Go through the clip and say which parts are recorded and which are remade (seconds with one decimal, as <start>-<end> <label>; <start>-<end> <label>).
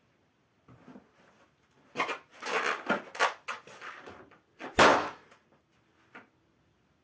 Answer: 0.0-4.9 recorded; 4.9-5.7 remade; 5.7-7.0 recorded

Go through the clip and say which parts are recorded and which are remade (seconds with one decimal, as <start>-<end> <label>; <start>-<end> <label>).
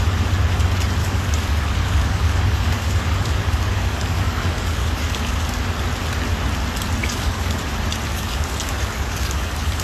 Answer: 0.0-1.0 recorded; 1.0-5.6 remade; 5.6-7.0 recorded; 7.0-7.6 remade; 7.6-8.1 recorded; 8.1-9.8 remade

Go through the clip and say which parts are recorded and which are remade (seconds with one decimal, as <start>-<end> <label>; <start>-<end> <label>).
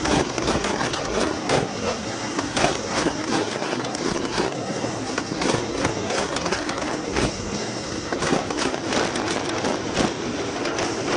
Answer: 0.0-8.8 remade; 8.8-11.2 recorded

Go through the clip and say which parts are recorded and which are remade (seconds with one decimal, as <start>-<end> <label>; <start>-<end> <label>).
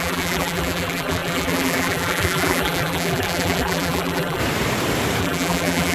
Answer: 0.0-4.4 remade; 4.4-5.2 recorded; 5.2-5.9 remade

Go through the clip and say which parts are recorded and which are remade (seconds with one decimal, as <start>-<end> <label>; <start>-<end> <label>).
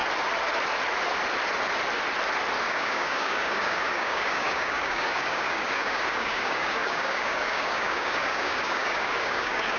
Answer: 0.0-2.6 recorded; 2.6-9.8 remade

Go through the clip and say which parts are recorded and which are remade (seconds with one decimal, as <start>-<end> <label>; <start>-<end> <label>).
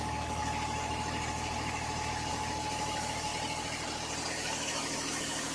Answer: 0.0-3.3 remade; 3.3-4.3 recorded; 4.3-5.5 remade